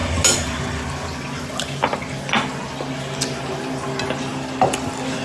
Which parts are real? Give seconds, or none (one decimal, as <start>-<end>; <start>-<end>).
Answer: 0.0-5.2